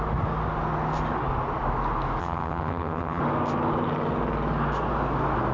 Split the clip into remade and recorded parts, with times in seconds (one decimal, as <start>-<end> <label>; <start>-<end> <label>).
0.0-2.2 recorded; 2.2-3.2 remade; 3.2-5.5 recorded